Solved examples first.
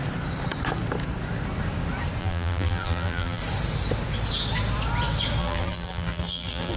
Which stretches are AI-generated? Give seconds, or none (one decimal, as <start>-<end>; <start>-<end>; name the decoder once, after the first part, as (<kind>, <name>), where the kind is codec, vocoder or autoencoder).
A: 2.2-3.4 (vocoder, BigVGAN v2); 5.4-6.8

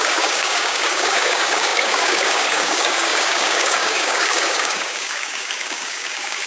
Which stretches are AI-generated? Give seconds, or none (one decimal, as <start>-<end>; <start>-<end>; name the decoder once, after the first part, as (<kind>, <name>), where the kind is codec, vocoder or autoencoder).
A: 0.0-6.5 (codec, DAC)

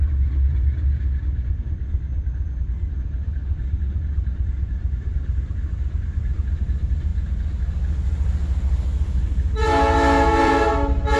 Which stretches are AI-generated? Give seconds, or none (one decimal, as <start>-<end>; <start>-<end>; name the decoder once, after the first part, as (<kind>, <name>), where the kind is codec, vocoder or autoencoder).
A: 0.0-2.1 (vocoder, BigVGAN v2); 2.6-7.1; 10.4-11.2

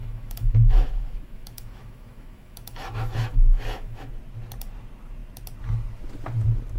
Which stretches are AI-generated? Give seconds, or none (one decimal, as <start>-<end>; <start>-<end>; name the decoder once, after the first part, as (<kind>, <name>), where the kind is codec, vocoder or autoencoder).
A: 0.0-4.1 (autoencoder, DAC-VAE)

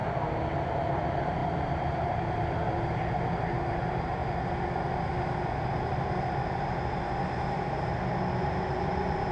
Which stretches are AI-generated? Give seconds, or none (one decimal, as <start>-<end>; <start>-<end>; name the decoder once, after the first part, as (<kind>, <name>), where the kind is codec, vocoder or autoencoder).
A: 0.5-4.2 (vocoder, BigVGAN v2)

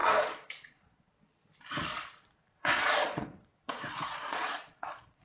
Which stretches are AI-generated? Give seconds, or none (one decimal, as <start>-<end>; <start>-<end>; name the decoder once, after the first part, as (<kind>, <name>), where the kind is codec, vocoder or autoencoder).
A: 0.0-1.1 (vocoder, Vocos); 1.9-5.2